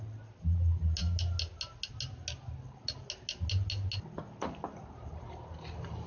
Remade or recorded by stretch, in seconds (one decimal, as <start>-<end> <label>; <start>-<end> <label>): 0.0-6.1 recorded